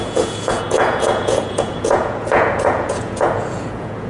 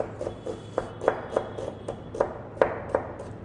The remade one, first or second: first